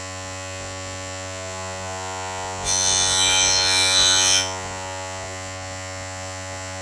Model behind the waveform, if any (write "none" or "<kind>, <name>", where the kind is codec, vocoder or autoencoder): vocoder, Vocos